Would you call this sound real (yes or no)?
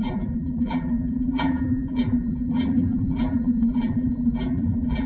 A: no